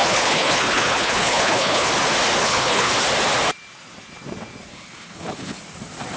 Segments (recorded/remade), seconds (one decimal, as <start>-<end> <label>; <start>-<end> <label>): 0.0-1.9 remade; 1.9-2.4 recorded; 2.4-2.9 remade; 2.9-4.7 recorded; 4.7-5.6 remade; 5.6-6.2 recorded